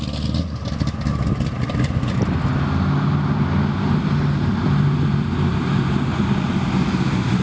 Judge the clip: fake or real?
real